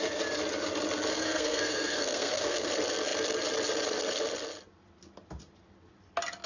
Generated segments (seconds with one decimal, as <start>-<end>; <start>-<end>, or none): 1.1-2.7

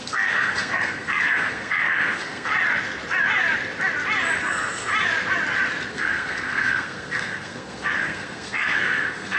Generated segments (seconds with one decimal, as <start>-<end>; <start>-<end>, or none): 0.0-2.5; 4.4-4.9; 5.9-9.4

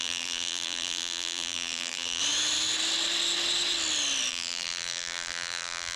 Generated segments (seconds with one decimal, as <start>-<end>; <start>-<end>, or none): 0.0-2.2; 4.3-6.0

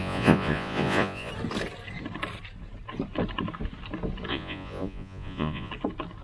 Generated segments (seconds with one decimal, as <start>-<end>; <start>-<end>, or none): 0.0-1.3; 4.3-5.7

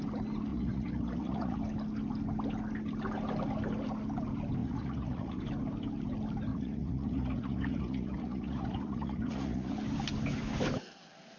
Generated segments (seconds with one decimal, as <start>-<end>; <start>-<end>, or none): 0.5-1.6; 4.6-5.4; 6.5-9.7